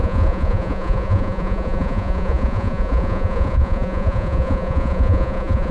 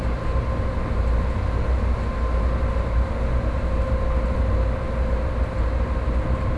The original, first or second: second